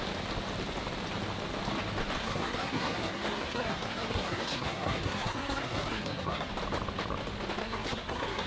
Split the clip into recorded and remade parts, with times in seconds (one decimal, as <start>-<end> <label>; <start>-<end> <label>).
0.0-2.2 recorded; 2.2-6.5 remade; 6.5-7.6 recorded; 7.6-8.5 remade